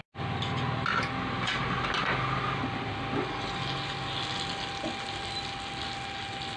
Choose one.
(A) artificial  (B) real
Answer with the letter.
B